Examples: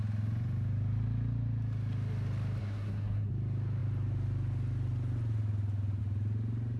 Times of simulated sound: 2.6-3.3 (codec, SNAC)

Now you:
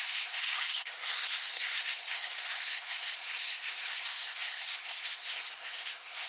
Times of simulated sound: 0.0-6.3 (codec, SNAC)

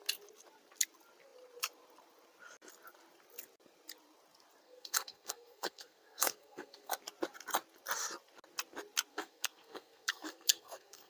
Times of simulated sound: 4.6-7.0 (codec, SNAC); 9.1-11.1

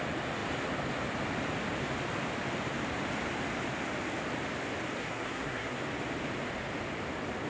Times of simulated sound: 5.0-5.8 (codec, SNAC)

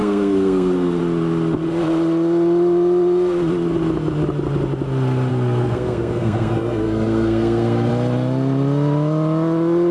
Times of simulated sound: 0.0-1.0 (codec, SNAC); 5.3-7.9

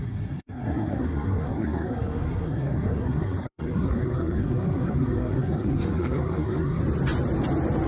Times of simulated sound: 0.0-6.8 (codec, SNAC)

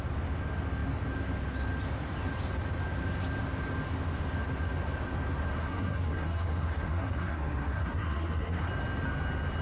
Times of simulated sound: 5.6-8.7 (codec, SNAC)

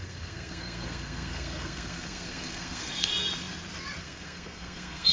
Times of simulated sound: 0.0-3.1 (codec, SNAC); 4.0-5.1